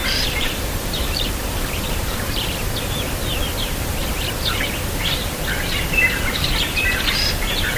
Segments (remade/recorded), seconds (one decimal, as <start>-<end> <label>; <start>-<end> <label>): 0.0-2.4 remade; 2.4-7.8 recorded